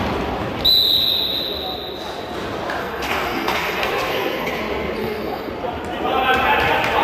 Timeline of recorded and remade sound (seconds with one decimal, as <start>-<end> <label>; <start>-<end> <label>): 0.0-2.8 recorded; 2.8-4.6 remade; 4.6-5.0 recorded; 5.0-5.5 remade; 5.5-7.0 recorded